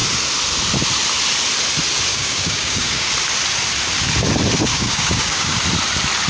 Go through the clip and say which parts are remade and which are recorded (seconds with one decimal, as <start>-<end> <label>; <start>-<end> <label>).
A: 0.0-2.1 recorded; 2.1-3.1 remade; 3.1-4.7 recorded; 4.7-5.6 remade; 5.6-6.3 recorded